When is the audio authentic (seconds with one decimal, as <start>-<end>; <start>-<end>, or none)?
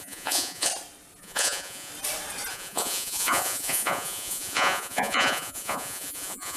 0.7-1.2; 1.9-2.5